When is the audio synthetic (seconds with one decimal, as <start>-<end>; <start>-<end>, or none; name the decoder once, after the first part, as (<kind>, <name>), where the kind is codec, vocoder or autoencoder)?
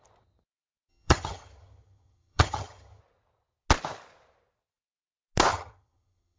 0.9-3.0 (vocoder, HiFi-GAN); 5.5-6.4